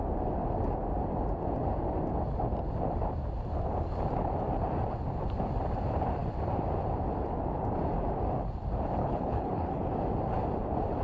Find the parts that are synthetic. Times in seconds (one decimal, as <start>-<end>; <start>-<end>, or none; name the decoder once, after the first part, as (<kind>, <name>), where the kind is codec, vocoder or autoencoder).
9.0-9.8 (codec, HILCodec)